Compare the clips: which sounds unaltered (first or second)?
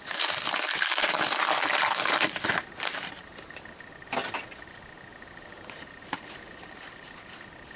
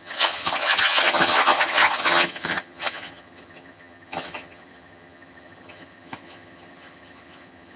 first